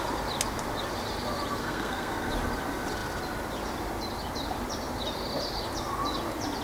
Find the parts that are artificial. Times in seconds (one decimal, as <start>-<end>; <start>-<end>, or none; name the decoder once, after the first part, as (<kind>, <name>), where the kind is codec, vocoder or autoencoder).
1.6-2.3 (codec, SNAC)